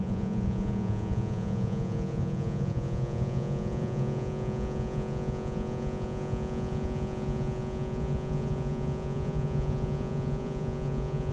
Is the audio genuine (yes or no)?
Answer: no